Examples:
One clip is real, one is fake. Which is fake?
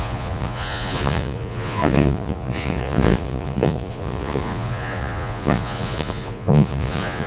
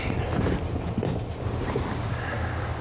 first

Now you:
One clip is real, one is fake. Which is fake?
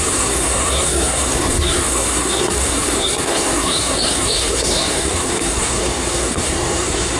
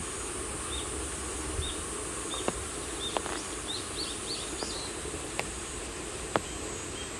first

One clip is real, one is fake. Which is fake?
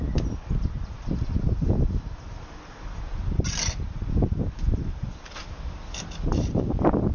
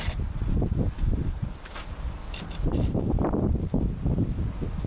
second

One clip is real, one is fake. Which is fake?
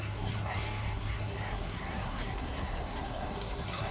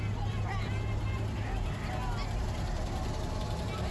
first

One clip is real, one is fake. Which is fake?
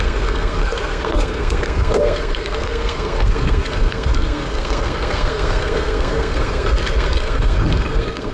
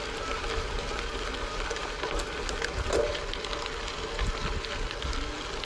first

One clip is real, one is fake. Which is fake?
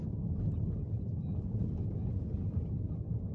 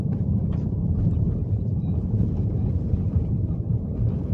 second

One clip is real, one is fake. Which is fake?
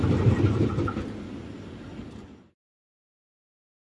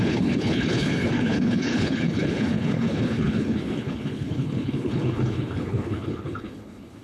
second